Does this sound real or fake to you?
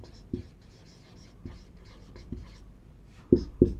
fake